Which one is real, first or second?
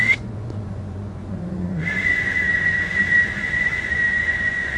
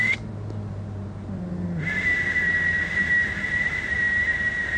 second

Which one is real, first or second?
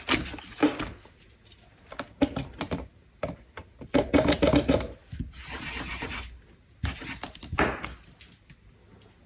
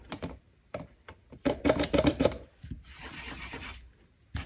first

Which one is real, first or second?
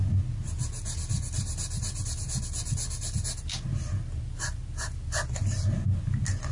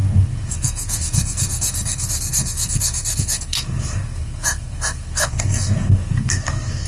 first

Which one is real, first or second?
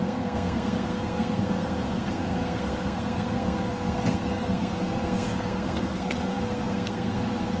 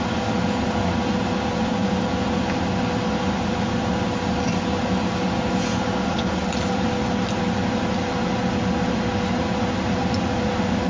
second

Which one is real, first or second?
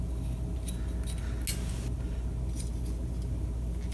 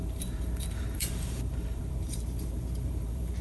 first